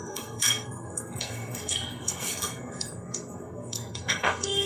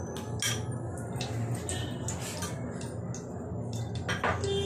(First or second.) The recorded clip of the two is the second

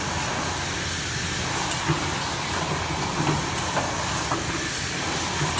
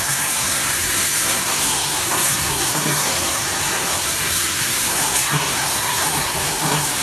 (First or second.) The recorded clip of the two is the first